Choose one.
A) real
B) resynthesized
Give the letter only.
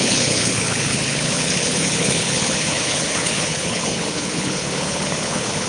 B